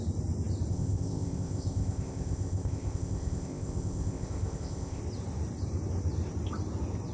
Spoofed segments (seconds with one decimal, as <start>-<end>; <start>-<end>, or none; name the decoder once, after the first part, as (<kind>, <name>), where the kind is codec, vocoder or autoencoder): 0.7-5.0 (codec, ZipCodec)